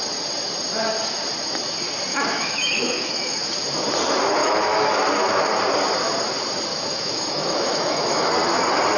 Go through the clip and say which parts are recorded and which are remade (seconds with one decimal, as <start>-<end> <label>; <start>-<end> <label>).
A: 0.0-2.1 recorded; 2.1-3.4 remade; 3.4-4.4 recorded; 4.4-5.0 remade; 5.0-6.7 recorded; 6.7-8.3 remade; 8.3-9.0 recorded